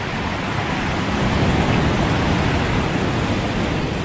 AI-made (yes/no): no